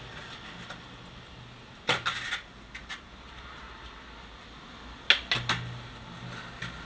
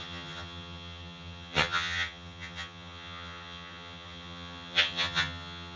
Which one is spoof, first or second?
second